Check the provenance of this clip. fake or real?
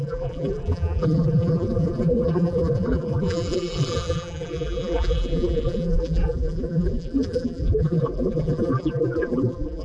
fake